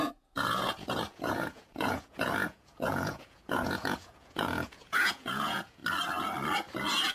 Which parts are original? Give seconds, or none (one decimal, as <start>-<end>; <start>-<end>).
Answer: 5.8-7.1

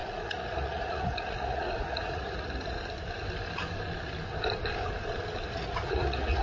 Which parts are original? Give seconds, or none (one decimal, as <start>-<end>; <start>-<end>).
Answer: 2.8-5.5

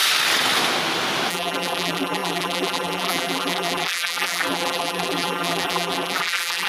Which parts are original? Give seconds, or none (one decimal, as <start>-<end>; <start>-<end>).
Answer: 0.0-1.3

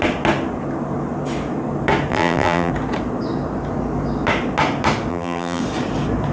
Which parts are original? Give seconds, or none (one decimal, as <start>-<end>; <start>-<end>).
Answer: 0.0-2.1; 2.7-5.1; 5.6-6.3

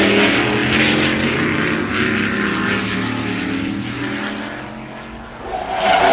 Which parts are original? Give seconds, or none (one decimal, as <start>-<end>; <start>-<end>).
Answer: 0.0-6.1

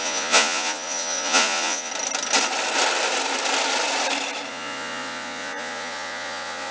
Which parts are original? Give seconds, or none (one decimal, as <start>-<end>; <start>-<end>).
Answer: 1.9-4.5

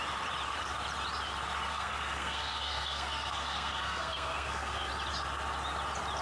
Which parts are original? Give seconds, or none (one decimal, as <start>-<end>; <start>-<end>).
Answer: 0.0-1.7; 4.9-6.2